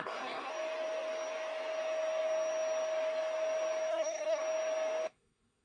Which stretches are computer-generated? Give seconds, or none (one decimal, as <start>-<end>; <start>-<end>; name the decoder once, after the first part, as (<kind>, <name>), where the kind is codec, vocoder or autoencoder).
0.0-0.5 (codec, SNAC); 3.9-4.4; 5.1-5.6